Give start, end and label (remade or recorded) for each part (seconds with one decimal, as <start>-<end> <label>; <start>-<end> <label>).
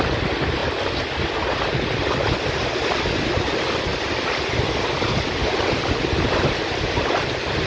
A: 0.0-7.7 recorded